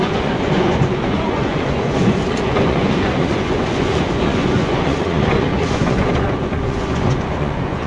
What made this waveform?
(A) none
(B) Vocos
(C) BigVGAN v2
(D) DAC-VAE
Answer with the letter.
B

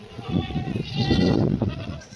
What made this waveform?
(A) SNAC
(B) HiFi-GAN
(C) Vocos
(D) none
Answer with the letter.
C